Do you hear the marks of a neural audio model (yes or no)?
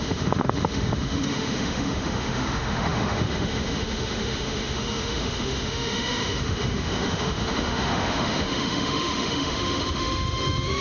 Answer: yes